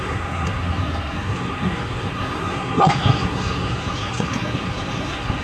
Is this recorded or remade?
remade